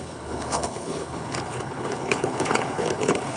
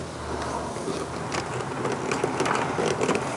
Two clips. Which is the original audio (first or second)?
second